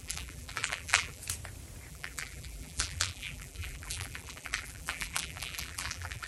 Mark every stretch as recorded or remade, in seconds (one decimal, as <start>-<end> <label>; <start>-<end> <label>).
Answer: 0.0-1.2 remade; 1.2-1.9 recorded; 1.9-6.3 remade